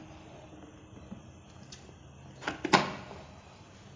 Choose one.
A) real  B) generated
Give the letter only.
A